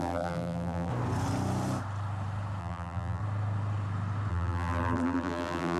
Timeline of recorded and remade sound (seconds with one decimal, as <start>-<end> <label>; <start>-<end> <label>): 0.0-0.9 remade; 0.9-2.6 recorded; 2.6-3.2 remade; 3.2-4.3 recorded; 4.3-5.8 remade